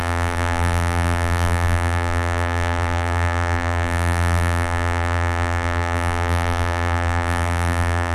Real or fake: fake